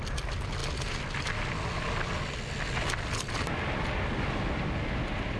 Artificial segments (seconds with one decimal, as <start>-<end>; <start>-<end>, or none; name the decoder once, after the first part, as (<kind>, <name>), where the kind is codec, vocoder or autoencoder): none